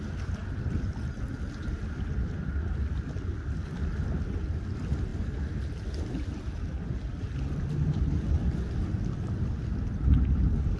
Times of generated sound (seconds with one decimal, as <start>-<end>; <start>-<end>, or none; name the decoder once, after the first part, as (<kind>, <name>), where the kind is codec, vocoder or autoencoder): none